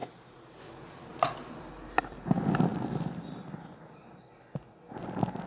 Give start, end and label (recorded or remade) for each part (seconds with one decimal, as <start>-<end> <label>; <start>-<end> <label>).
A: 0.0-0.6 remade; 0.6-5.5 recorded